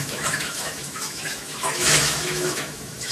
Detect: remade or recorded remade